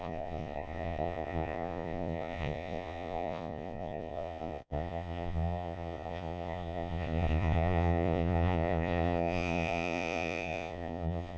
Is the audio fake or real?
fake